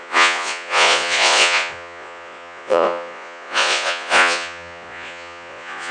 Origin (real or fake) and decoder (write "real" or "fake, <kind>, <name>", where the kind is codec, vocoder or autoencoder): fake, vocoder, Vocos